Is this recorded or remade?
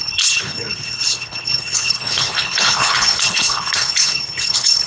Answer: remade